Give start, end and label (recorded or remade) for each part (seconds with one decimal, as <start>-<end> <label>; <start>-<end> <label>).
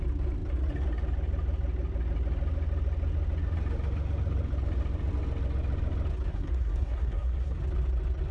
0.0-6.3 recorded; 6.3-7.6 remade; 7.6-8.3 recorded